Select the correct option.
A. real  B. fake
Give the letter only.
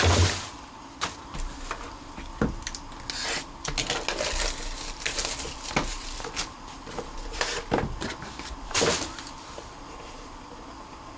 A